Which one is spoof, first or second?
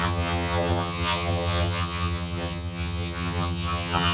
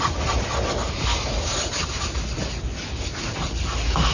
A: first